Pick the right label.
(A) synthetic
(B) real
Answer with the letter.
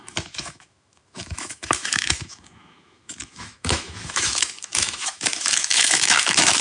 A